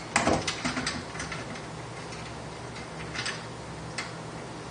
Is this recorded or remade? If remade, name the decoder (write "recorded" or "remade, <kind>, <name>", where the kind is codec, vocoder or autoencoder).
recorded